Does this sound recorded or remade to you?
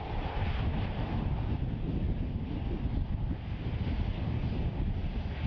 recorded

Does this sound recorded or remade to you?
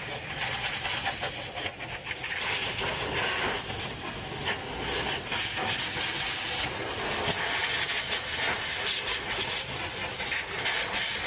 recorded